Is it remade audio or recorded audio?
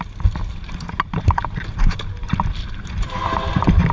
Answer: recorded